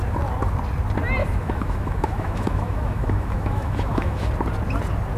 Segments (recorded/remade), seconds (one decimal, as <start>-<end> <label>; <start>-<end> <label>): 0.0-1.2 recorded; 1.2-4.3 remade; 4.3-5.2 recorded